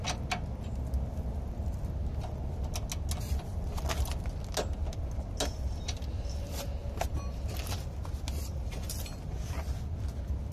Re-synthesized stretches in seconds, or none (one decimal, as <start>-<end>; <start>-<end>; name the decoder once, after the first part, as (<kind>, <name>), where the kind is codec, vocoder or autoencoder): none

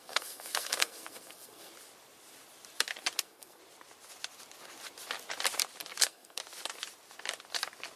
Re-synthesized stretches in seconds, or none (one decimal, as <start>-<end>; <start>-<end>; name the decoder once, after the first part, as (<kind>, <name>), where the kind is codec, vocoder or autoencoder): 0.0-1.7 (codec, SNAC); 3.2-3.6; 6.0-6.4

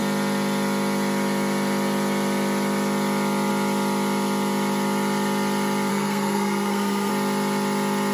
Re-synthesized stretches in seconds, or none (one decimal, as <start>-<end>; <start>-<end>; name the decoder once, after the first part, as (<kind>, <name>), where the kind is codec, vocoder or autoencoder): 5.9-7.1 (codec, SNAC)

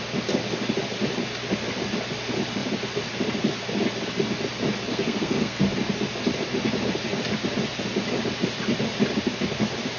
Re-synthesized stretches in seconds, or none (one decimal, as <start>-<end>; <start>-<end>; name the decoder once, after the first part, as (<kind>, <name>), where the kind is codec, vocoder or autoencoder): 4.9-5.6 (codec, SNAC)

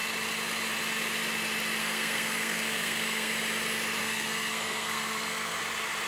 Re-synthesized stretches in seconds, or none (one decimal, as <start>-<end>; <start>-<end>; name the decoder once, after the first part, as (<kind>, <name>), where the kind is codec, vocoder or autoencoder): 1.8-3.3 (codec, SNAC); 4.0-5.6

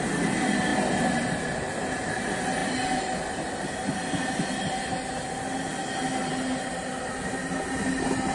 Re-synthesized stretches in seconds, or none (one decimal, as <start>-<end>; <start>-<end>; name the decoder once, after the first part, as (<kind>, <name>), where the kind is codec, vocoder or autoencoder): none

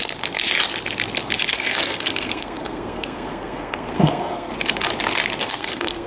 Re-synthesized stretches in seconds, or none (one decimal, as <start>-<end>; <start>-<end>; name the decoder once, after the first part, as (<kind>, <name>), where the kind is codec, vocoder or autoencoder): 1.5-4.5 (codec, SNAC); 5.4-6.1